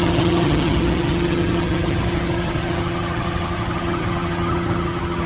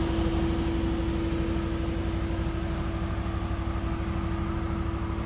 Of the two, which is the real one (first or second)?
second